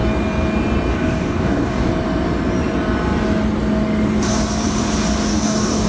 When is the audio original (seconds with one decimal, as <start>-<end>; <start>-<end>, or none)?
0.0-0.9; 1.9-5.3